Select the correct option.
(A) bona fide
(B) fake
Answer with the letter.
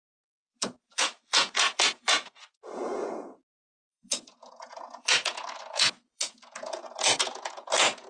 B